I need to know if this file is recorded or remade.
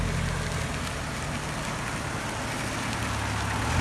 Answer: recorded